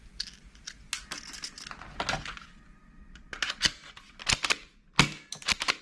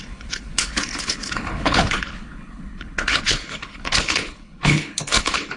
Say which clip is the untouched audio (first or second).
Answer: first